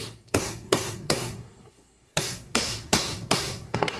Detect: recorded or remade remade